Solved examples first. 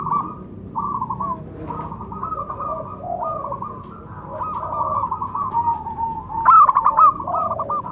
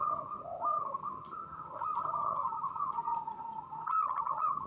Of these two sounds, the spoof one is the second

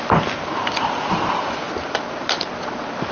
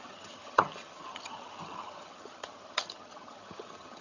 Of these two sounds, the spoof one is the second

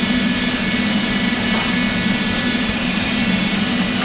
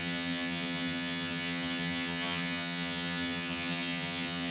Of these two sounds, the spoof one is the second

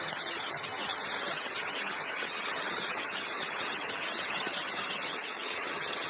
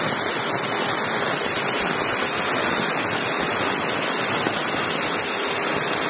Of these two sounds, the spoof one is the first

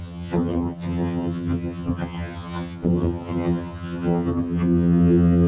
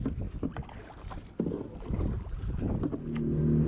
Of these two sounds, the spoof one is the first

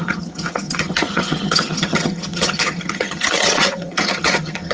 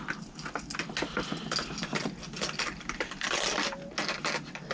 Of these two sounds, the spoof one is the first